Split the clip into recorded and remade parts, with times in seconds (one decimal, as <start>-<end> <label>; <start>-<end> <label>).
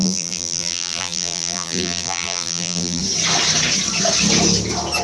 0.0-3.0 remade; 3.0-5.0 recorded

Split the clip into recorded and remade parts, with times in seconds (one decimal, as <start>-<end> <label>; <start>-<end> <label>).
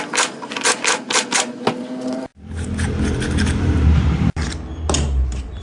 0.0-2.3 recorded; 2.3-4.5 remade; 4.5-5.6 recorded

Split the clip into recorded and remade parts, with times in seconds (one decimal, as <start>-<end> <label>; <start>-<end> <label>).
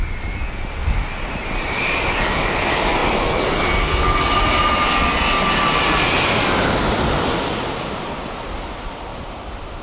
0.0-0.8 recorded; 0.8-2.1 remade; 2.1-9.8 recorded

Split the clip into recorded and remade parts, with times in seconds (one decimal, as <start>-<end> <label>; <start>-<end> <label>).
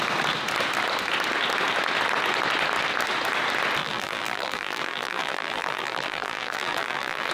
0.0-3.8 recorded; 3.8-7.3 remade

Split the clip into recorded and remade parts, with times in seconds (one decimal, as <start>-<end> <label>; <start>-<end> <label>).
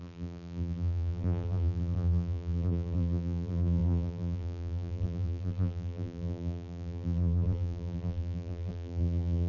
0.0-9.5 remade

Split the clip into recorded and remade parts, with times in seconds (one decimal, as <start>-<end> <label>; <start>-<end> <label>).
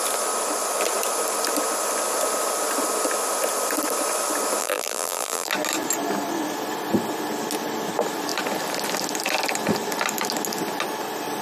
0.0-4.6 recorded; 4.6-5.5 remade; 5.5-11.4 recorded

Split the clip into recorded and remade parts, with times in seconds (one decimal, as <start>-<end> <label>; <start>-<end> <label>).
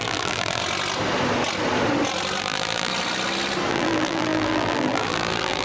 0.0-0.6 remade; 0.6-2.4 recorded; 2.4-2.9 remade; 2.9-3.7 recorded; 3.7-5.6 remade